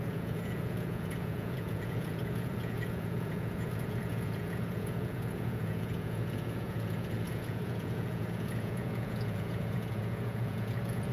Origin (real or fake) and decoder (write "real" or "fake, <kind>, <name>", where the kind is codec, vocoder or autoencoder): fake, vocoder, Vocos